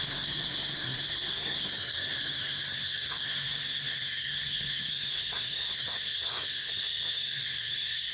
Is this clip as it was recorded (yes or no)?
no